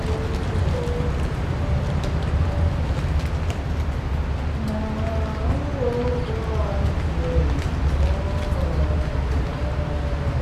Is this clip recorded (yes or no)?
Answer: yes